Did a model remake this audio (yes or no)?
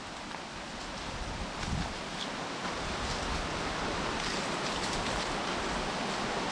no